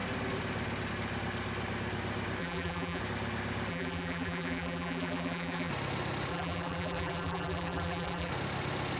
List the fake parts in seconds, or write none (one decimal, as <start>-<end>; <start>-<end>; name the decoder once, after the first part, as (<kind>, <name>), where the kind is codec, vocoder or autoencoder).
2.4-3.0 (vocoder, BigVGAN v2); 3.7-5.7; 6.3-8.3